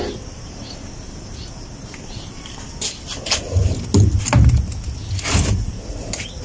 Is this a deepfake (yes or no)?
no